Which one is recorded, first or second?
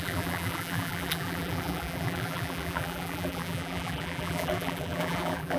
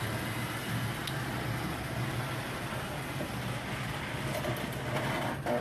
second